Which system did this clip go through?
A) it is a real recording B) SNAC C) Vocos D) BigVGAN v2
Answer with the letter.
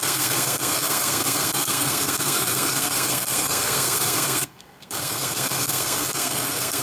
B